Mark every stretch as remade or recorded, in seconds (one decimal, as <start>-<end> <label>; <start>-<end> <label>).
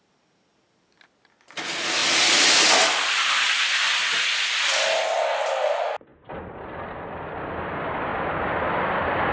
0.0-9.3 recorded